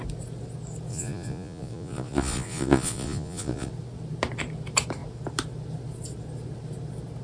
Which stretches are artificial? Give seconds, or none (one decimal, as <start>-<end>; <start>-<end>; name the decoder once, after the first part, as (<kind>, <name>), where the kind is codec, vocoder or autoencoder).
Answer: 0.9-3.7 (vocoder, Vocos)